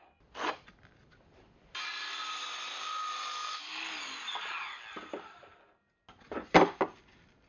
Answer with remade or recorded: recorded